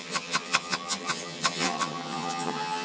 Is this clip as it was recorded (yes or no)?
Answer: no